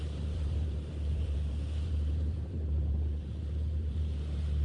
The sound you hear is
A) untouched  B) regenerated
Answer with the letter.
B